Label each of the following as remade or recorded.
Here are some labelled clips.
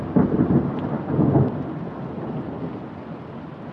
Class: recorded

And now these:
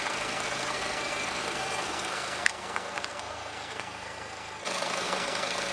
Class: remade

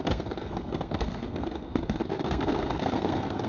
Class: remade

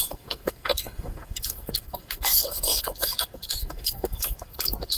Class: remade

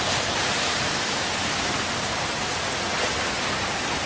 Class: recorded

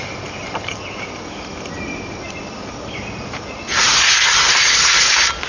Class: recorded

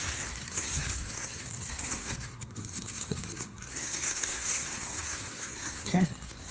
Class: remade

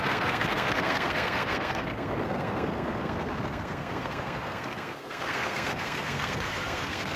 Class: remade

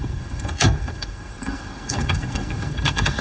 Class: remade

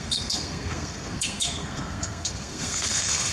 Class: remade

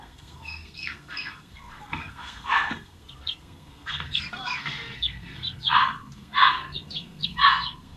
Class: remade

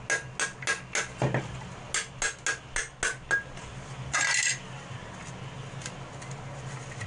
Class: recorded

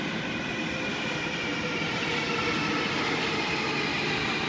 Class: recorded